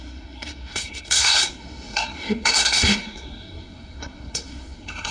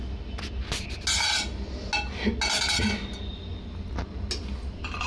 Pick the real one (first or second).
second